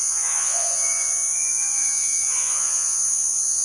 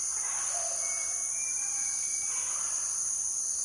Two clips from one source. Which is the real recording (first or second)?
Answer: second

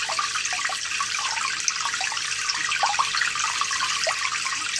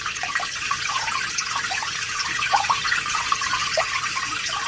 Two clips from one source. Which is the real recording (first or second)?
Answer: first